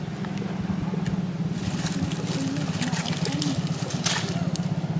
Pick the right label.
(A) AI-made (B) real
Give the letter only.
B